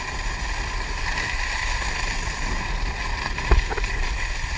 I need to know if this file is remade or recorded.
recorded